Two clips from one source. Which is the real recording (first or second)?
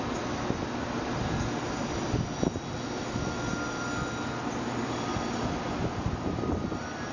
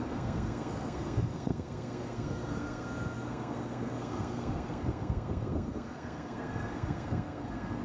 first